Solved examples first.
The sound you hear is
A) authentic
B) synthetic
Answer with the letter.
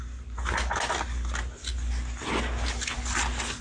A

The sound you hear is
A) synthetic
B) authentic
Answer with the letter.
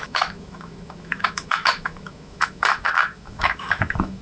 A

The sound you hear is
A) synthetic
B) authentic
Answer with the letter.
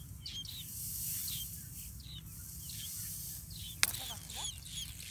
B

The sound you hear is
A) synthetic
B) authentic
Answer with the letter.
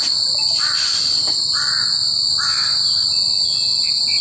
B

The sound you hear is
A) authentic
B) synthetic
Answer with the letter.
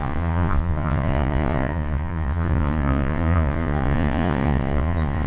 B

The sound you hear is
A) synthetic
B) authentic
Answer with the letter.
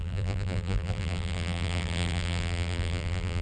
A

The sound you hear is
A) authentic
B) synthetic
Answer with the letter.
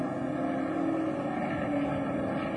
A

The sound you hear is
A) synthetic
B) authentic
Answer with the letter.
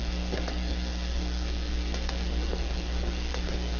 A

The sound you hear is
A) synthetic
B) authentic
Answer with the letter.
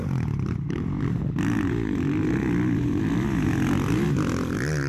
B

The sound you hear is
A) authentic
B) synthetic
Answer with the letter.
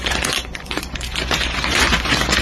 B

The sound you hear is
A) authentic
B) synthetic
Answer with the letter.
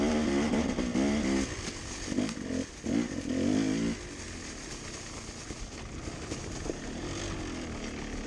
A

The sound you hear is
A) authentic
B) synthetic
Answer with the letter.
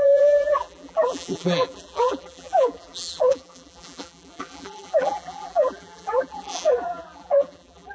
B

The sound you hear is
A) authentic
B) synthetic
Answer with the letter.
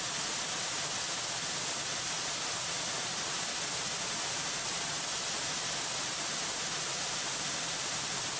A